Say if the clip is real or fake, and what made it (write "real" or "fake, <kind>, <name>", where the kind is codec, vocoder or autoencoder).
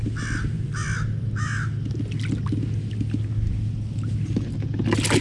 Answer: real